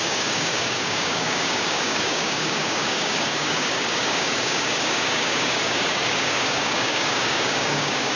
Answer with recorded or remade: remade